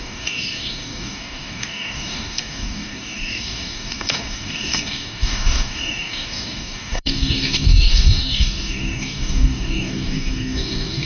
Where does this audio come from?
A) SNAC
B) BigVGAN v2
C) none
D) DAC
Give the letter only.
D